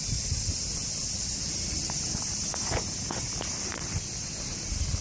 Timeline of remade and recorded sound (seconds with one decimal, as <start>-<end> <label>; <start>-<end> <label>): 0.0-5.0 recorded